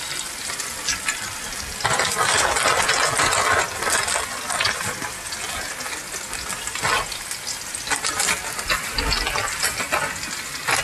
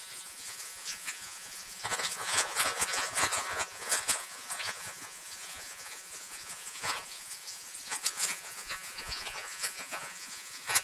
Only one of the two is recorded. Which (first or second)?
first